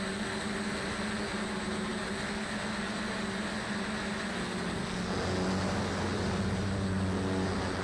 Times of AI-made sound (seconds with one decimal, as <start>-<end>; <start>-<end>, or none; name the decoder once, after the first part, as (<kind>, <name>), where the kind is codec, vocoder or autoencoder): none